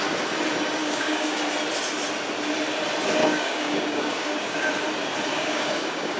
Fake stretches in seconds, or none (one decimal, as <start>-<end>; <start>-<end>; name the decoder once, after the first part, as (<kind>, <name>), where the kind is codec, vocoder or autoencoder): 0.8-1.4 (codec, DAC); 3.2-4.7; 5.3-6.2